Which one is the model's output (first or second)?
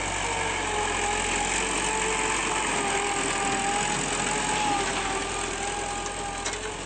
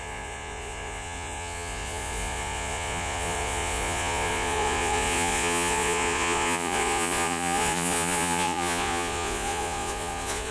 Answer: second